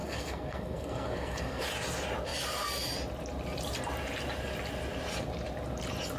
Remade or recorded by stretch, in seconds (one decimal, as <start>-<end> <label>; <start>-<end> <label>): 0.0-1.6 remade; 1.6-6.2 recorded